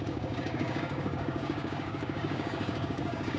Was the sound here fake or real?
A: fake